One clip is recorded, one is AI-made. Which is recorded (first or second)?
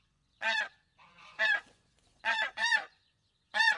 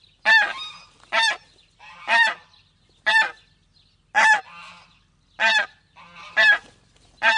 second